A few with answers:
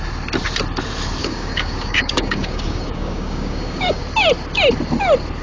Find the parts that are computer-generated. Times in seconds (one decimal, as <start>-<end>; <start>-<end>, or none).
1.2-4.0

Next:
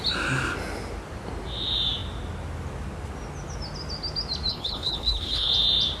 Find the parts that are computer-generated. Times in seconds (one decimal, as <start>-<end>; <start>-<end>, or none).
4.5-5.5

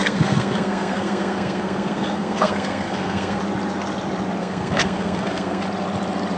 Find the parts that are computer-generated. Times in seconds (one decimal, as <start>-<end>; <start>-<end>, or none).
0.0-3.4; 4.4-5.6

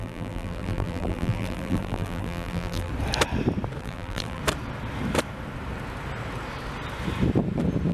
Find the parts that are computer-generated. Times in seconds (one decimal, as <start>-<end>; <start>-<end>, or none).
0.0-2.9; 3.8-4.4